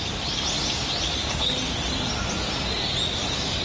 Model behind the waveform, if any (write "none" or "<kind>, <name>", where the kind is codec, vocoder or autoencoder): none